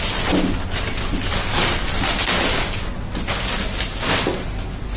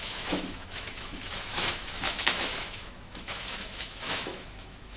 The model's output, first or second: second